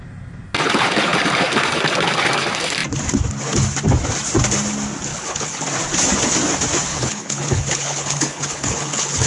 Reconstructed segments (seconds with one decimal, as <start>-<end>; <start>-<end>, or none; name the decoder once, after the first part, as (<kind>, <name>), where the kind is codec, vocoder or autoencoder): 5.1-5.6 (codec, HILCodec); 6.9-9.3